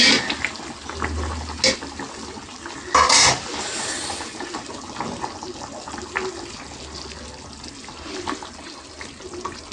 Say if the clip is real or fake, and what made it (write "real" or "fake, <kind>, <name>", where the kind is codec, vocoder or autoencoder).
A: real